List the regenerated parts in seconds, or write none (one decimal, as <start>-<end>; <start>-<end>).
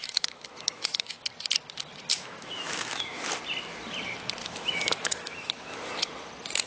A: 0.0-1.3; 2.1-3.3; 4.4-5.9